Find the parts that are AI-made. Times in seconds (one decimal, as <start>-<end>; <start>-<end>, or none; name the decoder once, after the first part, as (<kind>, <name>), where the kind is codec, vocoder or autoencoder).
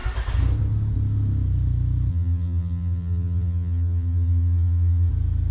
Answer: 2.1-5.1 (vocoder, BigVGAN v2)